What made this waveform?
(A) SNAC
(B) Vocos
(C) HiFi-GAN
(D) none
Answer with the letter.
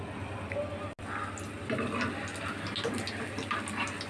D